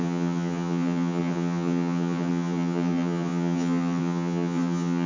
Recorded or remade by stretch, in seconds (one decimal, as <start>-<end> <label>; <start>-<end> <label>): 0.0-5.1 remade